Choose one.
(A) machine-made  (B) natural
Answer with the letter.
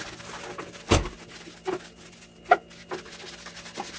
B